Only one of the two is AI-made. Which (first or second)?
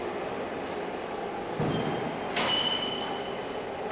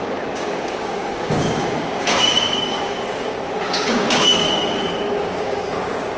second